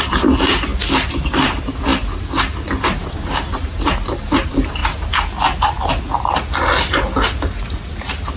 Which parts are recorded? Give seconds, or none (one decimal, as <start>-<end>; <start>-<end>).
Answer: 0.7-1.3; 1.9-2.8; 4.8-6.9